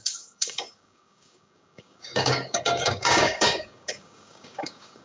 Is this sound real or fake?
fake